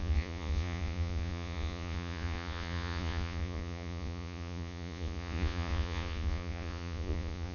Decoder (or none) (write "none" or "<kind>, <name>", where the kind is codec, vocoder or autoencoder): vocoder, Vocos